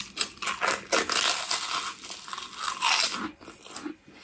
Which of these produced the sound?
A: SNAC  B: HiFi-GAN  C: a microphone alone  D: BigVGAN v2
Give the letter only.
C